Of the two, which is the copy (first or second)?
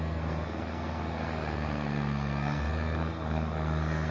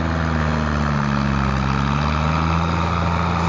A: first